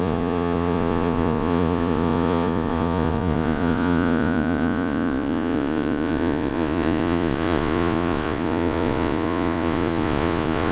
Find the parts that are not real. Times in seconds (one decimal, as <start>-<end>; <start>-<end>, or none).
0.0-10.7